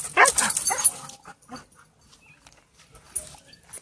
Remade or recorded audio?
recorded